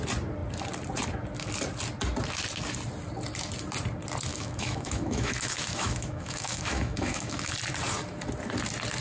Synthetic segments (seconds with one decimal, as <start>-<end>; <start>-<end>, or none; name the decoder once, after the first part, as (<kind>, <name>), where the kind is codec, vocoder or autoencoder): 4.3-7.5 (autoencoder, DAC-VAE)